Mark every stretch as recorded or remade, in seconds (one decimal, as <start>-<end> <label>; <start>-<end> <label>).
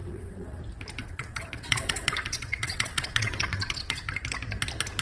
0.0-0.6 remade; 0.6-1.0 recorded; 1.0-4.0 remade; 4.0-5.0 recorded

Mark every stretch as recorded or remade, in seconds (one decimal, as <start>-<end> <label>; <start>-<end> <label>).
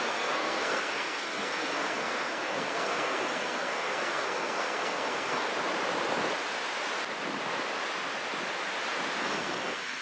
0.0-5.5 remade; 5.5-9.2 recorded; 9.2-10.0 remade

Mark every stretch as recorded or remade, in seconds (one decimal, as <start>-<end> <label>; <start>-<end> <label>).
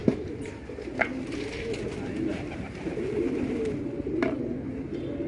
0.0-5.3 recorded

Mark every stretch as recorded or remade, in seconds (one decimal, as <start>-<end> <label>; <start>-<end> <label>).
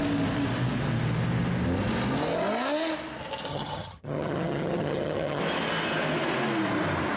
0.0-3.5 recorded; 3.5-5.4 remade; 5.4-7.2 recorded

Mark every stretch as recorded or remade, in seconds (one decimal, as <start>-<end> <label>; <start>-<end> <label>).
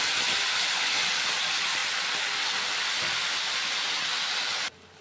0.0-5.0 recorded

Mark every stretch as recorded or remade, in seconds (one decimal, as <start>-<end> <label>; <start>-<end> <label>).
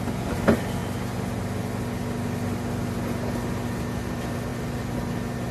0.0-5.5 recorded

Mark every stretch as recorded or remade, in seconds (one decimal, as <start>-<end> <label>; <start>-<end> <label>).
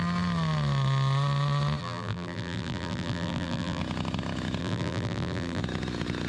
0.0-1.8 recorded; 1.8-3.8 remade; 3.8-4.6 recorded; 4.6-5.6 remade; 5.6-6.3 recorded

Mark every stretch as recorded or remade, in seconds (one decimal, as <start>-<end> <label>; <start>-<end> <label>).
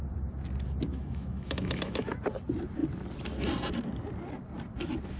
0.0-0.9 recorded; 0.9-2.2 remade; 2.2-5.2 recorded